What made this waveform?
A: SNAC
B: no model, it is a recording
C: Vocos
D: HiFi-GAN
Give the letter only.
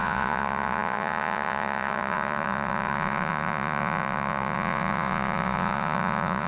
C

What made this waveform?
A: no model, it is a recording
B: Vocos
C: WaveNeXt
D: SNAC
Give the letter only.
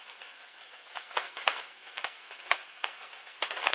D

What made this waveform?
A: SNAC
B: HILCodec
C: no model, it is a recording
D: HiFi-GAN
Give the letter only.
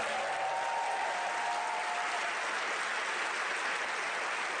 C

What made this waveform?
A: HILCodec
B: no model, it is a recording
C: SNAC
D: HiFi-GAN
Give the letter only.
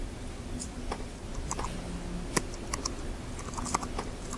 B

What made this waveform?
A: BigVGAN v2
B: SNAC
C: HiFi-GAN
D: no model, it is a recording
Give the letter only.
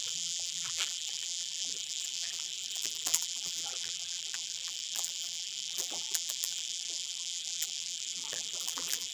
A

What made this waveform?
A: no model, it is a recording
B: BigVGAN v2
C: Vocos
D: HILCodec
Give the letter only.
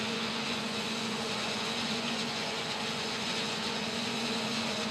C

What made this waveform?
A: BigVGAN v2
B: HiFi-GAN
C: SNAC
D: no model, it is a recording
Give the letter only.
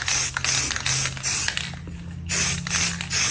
D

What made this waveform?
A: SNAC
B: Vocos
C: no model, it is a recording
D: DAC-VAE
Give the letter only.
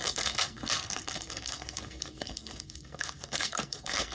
A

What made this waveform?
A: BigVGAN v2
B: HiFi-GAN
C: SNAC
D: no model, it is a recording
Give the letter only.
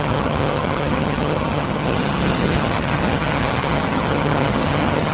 B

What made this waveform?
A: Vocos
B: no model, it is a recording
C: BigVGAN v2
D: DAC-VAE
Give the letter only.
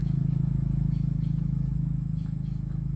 D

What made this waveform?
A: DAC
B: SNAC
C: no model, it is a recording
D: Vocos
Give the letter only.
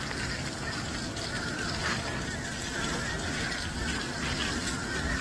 C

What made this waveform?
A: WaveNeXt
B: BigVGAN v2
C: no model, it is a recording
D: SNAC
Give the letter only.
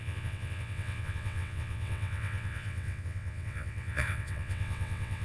A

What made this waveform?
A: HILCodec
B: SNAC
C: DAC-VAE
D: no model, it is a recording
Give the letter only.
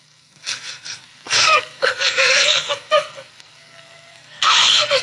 B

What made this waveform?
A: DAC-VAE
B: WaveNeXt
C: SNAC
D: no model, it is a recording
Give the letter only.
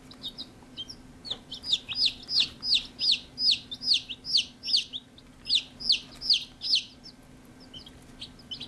D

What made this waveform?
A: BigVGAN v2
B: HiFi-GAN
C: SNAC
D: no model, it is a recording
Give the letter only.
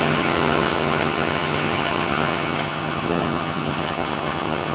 B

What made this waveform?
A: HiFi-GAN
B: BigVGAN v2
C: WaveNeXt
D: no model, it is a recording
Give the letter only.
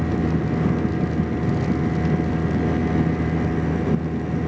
D